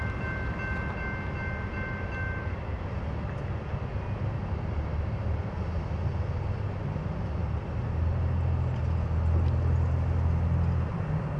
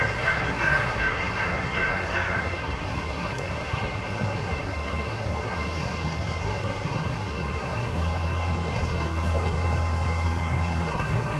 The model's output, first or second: second